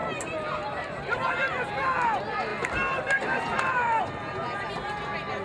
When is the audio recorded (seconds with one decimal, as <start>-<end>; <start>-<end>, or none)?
1.3-2.5; 4.0-5.4